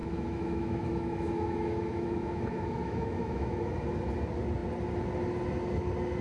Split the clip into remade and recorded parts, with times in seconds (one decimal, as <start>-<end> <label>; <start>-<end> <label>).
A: 0.0-3.7 remade; 3.7-6.2 recorded